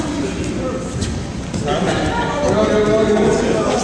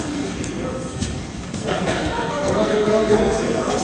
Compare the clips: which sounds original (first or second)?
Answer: first